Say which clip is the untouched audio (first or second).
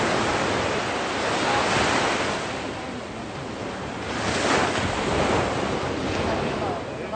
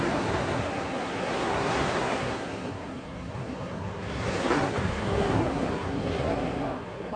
first